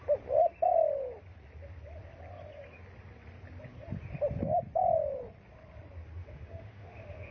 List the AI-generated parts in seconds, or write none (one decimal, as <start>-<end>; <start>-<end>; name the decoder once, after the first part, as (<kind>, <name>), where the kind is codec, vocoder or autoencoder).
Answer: 6.2-7.3 (autoencoder, DAC-VAE)